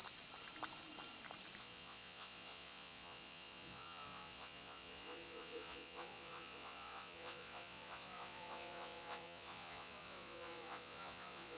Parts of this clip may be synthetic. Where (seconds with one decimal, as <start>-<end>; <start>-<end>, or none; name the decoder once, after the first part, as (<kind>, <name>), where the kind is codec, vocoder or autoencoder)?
1.6-11.6 (vocoder, Vocos)

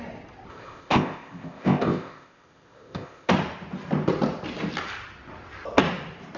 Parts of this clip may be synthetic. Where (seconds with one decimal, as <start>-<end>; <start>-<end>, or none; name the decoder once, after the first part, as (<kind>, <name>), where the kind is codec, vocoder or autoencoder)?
0.5-3.3 (codec, ZipCodec)

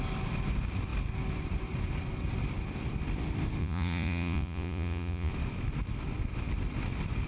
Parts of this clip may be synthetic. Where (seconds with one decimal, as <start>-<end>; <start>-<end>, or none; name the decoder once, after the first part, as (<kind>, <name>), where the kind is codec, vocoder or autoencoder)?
3.6-5.3 (vocoder, Vocos)

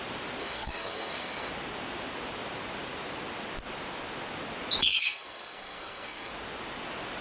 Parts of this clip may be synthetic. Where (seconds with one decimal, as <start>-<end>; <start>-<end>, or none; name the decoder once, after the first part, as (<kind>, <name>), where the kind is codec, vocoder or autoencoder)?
0.4-1.5 (codec, SNAC); 4.8-6.3

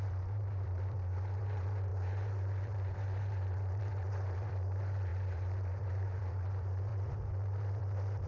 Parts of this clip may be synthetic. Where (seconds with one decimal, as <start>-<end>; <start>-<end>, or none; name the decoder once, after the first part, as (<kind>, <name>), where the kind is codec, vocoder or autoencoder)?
0.0-8.3 (vocoder, BigVGAN v2)